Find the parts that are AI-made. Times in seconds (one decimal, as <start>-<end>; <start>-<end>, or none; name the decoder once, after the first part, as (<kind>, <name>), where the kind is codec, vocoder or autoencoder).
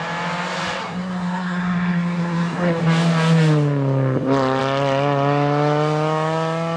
0.8-2.8 (codec, SNAC)